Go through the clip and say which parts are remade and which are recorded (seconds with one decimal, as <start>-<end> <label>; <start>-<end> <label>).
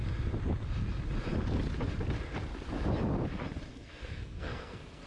0.0-3.7 recorded; 3.7-5.1 remade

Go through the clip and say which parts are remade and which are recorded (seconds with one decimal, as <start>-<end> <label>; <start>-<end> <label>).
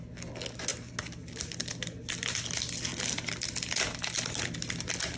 0.0-5.2 recorded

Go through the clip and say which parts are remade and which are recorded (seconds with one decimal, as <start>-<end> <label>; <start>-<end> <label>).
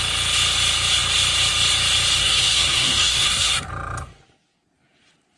0.0-2.2 recorded; 2.2-3.7 remade; 3.7-5.4 recorded